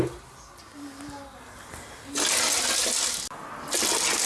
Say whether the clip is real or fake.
real